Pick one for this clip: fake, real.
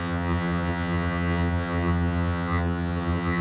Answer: fake